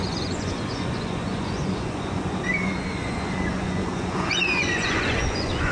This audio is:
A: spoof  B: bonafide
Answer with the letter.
A